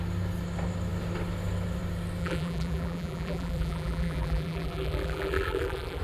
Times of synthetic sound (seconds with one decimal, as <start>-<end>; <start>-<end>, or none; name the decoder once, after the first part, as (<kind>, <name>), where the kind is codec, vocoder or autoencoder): 2.2-6.0 (vocoder, BigVGAN v2)